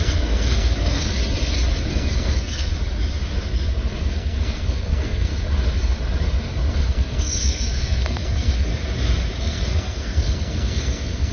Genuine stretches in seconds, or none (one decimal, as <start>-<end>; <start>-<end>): 1.1-1.9; 2.7-4.0; 5.3-6.7; 8.7-9.4